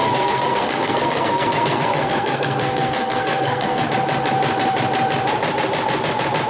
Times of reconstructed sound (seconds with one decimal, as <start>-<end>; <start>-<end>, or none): 0.0-3.9